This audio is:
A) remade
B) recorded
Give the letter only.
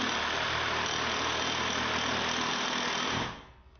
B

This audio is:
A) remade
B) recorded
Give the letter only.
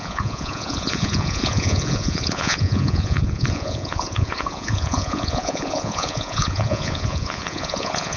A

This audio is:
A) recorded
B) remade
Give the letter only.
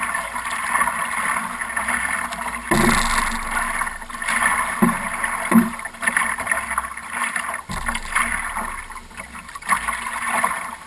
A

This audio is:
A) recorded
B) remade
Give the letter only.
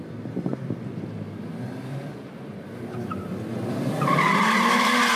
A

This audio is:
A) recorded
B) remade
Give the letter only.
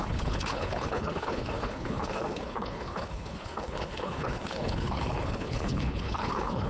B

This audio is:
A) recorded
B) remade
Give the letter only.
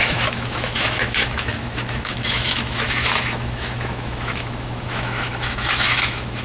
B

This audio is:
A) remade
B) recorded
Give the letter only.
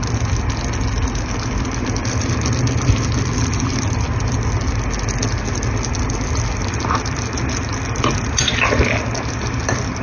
B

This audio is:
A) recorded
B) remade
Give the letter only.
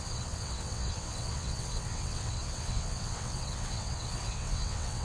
B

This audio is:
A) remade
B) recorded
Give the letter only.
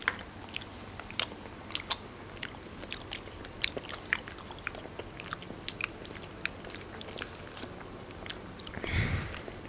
B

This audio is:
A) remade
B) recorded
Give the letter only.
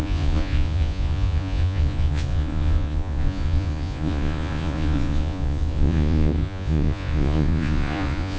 A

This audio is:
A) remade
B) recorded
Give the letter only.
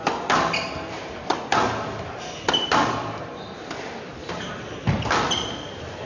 A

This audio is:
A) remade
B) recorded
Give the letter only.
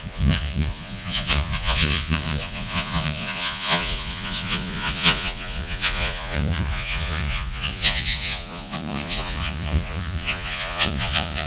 A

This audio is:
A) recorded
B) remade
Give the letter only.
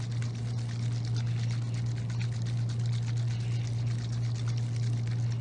A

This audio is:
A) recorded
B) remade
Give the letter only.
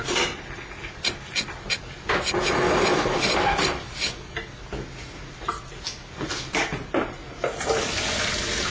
A